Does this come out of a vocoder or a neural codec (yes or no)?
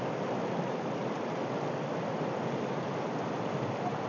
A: no